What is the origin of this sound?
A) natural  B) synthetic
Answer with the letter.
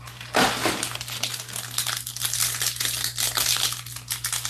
A